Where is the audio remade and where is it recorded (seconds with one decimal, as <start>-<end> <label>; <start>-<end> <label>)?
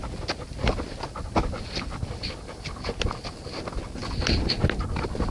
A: 0.0-5.3 recorded